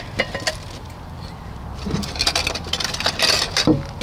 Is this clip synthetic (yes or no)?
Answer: no